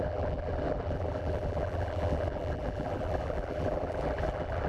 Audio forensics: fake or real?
fake